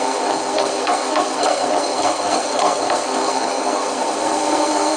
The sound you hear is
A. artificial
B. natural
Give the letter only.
A